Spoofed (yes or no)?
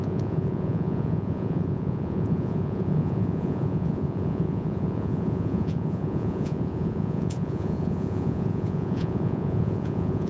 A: yes